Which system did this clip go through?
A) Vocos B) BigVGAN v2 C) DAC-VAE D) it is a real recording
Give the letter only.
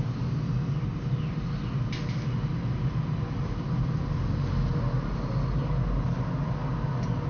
D